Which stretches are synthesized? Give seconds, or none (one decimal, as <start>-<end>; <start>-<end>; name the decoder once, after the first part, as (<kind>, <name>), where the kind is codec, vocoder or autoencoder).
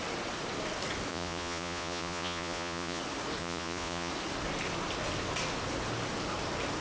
1.1-3.0 (vocoder, Vocos); 3.4-4.1